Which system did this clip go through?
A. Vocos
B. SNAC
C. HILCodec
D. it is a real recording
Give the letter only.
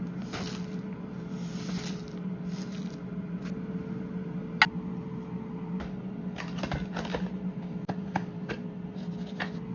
D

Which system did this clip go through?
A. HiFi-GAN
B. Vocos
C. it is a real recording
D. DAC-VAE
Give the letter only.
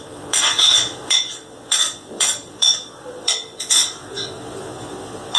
B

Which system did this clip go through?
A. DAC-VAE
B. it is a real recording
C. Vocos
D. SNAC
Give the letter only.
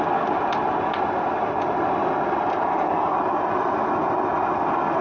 B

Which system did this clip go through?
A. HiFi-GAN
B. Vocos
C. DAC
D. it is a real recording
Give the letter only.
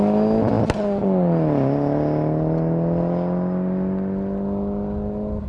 D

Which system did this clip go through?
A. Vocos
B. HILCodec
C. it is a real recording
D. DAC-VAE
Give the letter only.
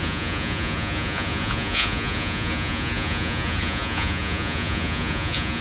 A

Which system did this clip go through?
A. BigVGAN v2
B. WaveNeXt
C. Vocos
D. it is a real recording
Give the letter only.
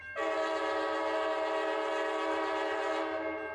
D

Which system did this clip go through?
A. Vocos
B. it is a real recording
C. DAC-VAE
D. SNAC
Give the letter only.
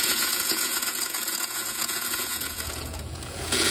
A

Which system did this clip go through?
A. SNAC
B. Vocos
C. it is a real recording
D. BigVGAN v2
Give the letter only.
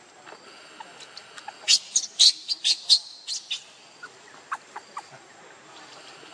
C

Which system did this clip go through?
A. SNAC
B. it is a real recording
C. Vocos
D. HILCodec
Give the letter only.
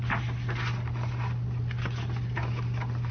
B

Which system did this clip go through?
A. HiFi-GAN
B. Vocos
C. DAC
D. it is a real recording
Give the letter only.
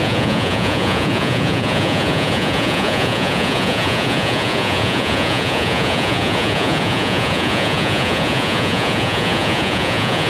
B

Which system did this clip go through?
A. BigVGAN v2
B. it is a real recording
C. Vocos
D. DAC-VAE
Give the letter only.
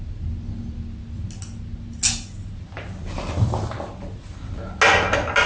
B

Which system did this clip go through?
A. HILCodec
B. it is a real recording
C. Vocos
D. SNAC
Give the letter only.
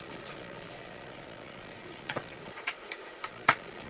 C